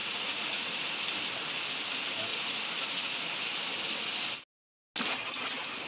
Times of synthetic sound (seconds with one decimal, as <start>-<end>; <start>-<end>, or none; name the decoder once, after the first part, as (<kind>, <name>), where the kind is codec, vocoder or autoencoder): 0.0-1.0 (vocoder, Vocos); 2.3-3.3